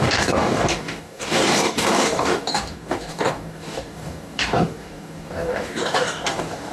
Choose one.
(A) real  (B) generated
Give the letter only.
B